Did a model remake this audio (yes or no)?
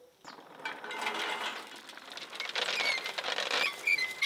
no